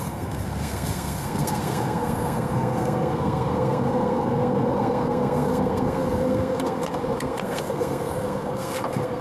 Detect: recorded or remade remade